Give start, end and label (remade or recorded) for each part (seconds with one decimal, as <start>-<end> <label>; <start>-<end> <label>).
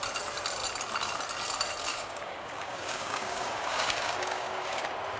0.0-1.9 recorded; 1.9-4.8 remade; 4.8-5.2 recorded